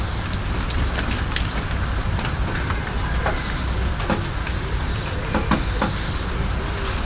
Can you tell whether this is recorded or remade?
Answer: recorded